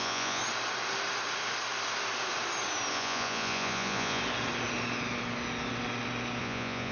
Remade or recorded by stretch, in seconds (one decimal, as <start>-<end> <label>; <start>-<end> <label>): 0.0-0.4 remade; 0.4-2.9 recorded; 2.9-4.2 remade; 4.2-6.4 recorded; 6.4-6.9 remade